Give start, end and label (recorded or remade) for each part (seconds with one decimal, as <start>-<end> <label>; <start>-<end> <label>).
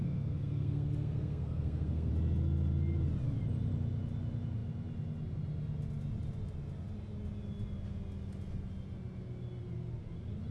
0.0-2.1 remade; 2.1-10.5 recorded